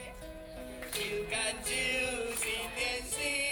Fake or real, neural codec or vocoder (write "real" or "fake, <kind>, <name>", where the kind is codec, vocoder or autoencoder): fake, vocoder, Vocos